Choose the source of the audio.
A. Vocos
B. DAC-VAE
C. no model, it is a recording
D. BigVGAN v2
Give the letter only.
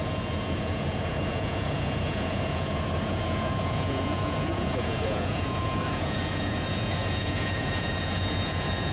A